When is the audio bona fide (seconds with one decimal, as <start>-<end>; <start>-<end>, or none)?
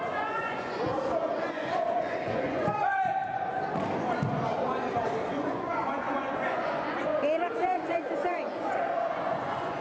0.9-1.5; 3.5-5.3